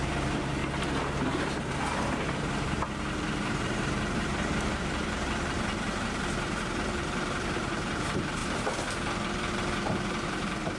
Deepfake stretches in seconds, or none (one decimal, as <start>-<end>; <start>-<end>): 0.0-0.6; 1.3-8.4; 9.5-10.8